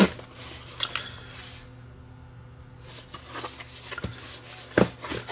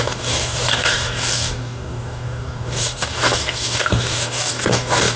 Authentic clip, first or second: first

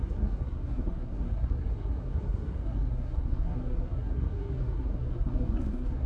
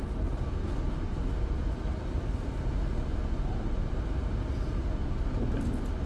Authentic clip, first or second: second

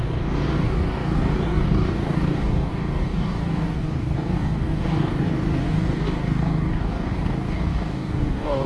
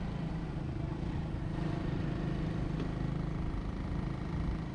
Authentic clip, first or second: second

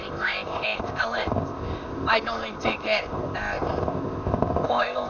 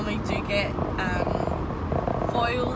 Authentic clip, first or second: second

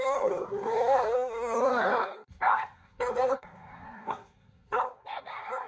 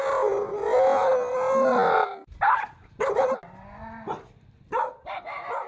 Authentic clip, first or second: second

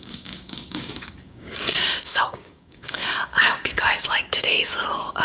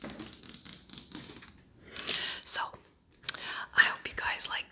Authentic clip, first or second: second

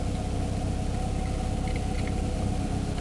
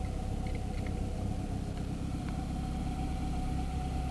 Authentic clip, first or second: first